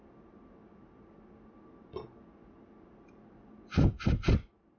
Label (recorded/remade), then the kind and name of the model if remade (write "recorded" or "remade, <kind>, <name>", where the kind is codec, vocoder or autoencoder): recorded